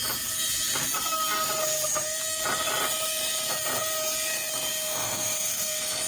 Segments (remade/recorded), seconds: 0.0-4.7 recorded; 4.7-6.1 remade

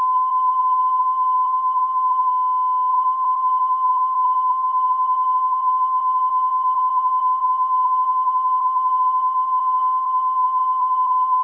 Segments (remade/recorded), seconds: 0.0-2.3 remade; 2.3-2.9 recorded; 2.9-11.4 remade

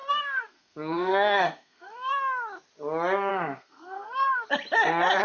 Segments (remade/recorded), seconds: 0.0-2.1 remade; 2.1-3.3 recorded; 3.3-4.5 remade; 4.5-5.2 recorded

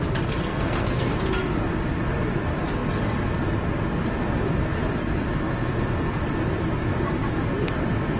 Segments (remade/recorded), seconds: 0.0-0.5 recorded; 0.5-1.1 remade; 1.1-8.2 recorded

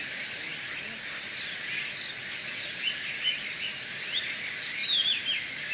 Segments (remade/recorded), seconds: 0.0-0.5 remade; 0.5-3.9 recorded; 3.9-4.8 remade; 4.8-5.7 recorded

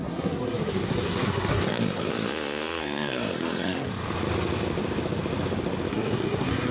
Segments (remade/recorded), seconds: 0.0-2.1 remade; 2.1-2.8 recorded; 2.8-3.9 remade; 3.9-5.9 recorded; 5.9-6.7 remade

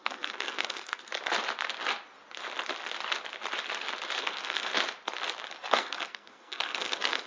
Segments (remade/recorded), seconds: 0.0-1.1 remade; 1.1-4.2 recorded; 4.2-4.7 remade; 4.7-5.7 recorded; 5.7-7.3 remade